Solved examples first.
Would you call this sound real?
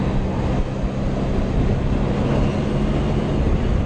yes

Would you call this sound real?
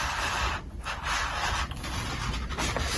yes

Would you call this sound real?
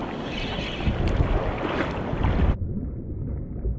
yes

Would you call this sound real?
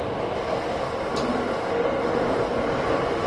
yes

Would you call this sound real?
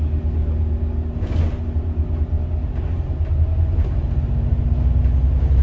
yes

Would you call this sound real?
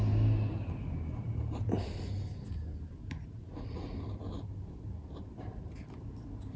yes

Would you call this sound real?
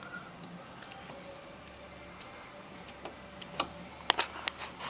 yes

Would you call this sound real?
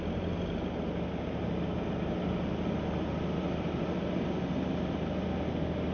yes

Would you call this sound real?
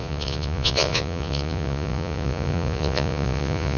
no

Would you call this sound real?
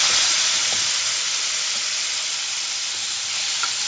no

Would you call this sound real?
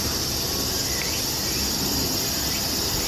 yes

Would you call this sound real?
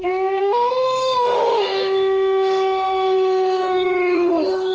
no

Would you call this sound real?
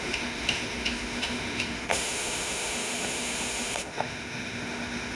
no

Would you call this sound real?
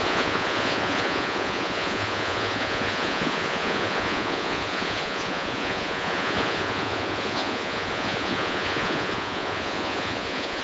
no